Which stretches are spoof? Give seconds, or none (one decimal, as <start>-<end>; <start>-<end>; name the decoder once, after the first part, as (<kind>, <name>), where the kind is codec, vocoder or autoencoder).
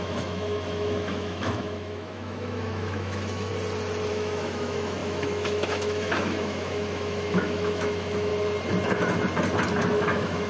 0.0-3.5 (autoencoder, DAC-VAE); 4.1-8.3; 9.8-10.5